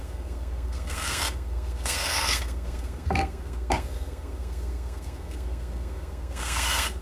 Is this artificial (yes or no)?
yes